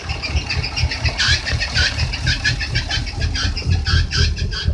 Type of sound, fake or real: fake